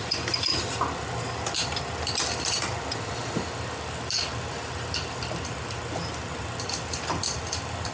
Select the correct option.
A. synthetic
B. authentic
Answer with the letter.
B